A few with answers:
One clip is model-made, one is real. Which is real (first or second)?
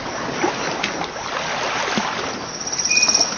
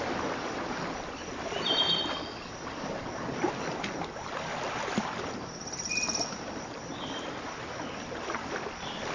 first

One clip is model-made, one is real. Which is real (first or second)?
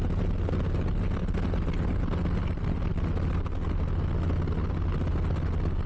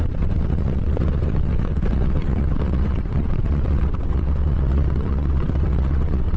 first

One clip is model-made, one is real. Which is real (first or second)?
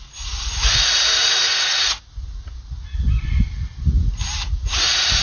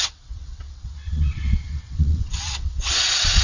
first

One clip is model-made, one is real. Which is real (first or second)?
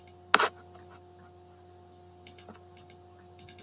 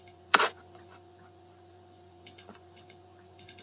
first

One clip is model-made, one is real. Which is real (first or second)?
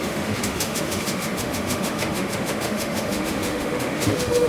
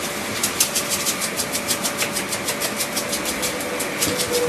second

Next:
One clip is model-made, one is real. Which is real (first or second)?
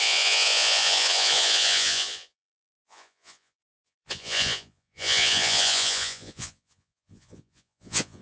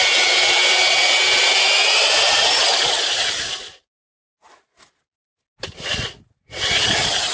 second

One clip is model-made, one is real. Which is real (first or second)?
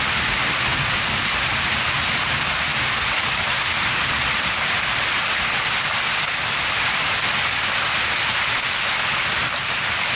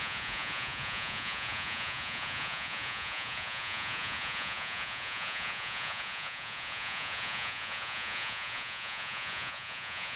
first